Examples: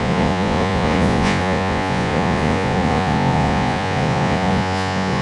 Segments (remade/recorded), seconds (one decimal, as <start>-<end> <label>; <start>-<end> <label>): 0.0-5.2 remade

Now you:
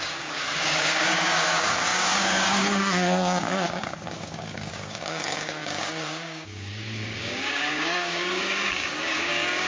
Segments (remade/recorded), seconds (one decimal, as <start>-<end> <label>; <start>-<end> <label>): 0.0-9.7 remade

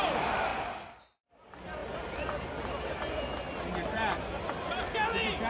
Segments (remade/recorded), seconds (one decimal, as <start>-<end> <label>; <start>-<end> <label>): 0.0-5.5 recorded

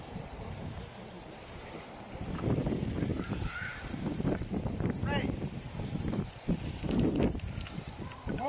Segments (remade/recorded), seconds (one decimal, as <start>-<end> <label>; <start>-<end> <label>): 0.0-8.5 remade

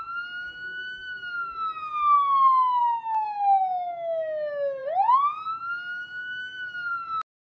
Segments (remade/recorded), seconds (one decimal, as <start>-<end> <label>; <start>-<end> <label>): 0.0-7.5 recorded

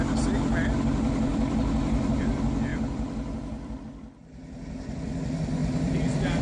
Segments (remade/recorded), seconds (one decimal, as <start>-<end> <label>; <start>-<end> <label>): 0.0-1.3 recorded; 1.3-2.3 remade; 2.3-2.7 recorded; 2.7-3.8 remade; 3.8-5.6 recorded; 5.6-6.4 remade

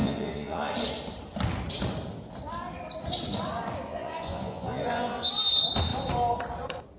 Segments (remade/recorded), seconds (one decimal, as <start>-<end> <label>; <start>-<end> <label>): 0.0-0.7 remade; 0.7-3.9 recorded; 3.9-5.3 remade; 5.3-7.0 recorded

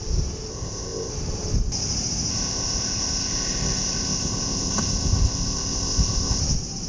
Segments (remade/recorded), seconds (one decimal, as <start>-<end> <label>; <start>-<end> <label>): 0.0-0.5 recorded; 0.5-1.1 remade; 1.1-2.3 recorded; 2.3-6.4 remade; 6.4-6.9 recorded